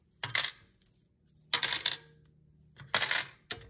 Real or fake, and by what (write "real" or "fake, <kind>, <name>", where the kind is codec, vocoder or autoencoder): real